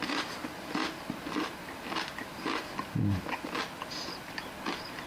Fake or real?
real